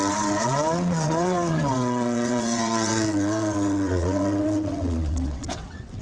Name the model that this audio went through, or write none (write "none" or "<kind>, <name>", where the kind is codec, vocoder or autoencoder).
vocoder, WaveNeXt